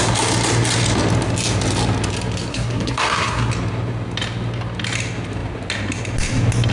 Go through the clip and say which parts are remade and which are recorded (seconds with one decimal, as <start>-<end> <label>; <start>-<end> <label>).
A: 0.0-2.5 recorded; 2.5-3.5 remade; 3.5-6.7 recorded